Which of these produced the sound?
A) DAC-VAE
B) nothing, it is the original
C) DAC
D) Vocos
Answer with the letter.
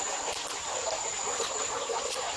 B